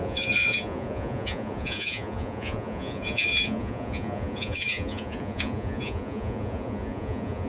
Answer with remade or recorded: remade